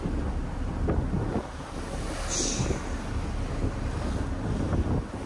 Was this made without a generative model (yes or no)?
yes